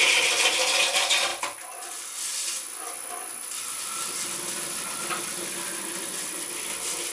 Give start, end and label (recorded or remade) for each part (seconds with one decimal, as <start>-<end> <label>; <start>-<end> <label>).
0.0-7.1 recorded